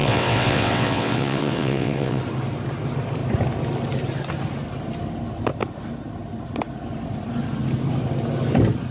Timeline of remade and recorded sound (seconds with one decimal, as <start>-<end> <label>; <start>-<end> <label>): 0.0-2.2 remade; 2.2-8.9 recorded

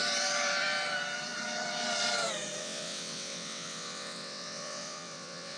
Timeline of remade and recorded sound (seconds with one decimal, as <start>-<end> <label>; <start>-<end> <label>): 0.0-2.6 recorded; 2.6-5.6 remade